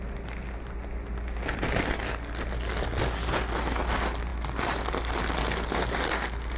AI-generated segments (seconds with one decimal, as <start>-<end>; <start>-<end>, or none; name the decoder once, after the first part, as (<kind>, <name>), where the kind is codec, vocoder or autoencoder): none